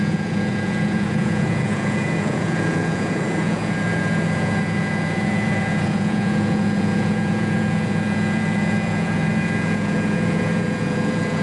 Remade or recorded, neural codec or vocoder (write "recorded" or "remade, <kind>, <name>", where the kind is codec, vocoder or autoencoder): remade, vocoder, Vocos